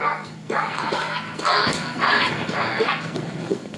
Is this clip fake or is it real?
fake